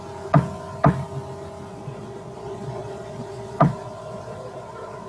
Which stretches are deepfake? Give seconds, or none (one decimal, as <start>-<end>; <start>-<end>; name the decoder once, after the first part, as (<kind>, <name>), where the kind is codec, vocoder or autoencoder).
1.7-5.1 (vocoder, Vocos)